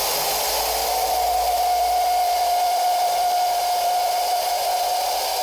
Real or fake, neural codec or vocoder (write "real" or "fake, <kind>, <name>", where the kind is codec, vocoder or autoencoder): real